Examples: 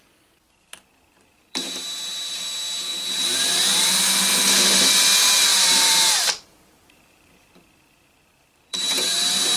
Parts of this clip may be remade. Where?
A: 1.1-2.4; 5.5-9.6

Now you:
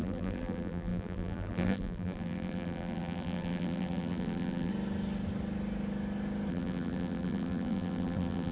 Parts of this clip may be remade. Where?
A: 0.0-4.7; 6.5-8.5

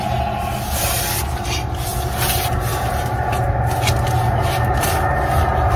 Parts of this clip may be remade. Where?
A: none

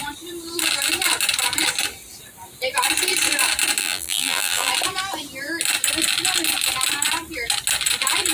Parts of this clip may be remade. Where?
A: 3.8-4.7

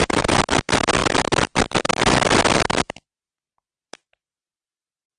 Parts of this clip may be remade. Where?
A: 0.0-5.2

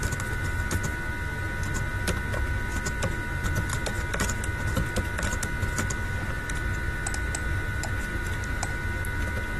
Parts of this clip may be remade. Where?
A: 8.1-8.7

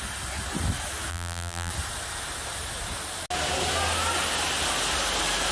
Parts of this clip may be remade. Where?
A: 1.1-1.7